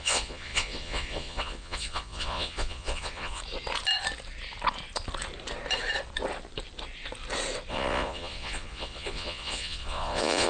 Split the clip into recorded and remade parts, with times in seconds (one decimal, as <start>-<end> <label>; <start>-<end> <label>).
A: 0.0-3.4 remade; 3.4-7.7 recorded; 7.7-10.5 remade